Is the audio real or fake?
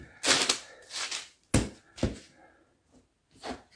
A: real